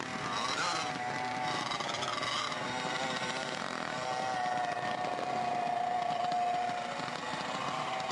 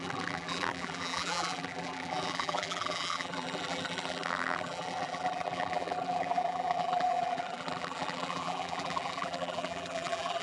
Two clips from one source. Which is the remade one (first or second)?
second